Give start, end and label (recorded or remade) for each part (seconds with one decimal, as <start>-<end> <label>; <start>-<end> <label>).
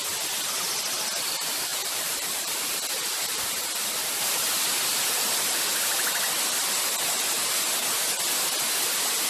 0.0-1.7 recorded; 1.7-5.6 remade; 5.6-9.3 recorded